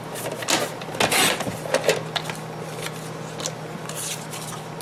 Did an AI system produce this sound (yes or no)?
no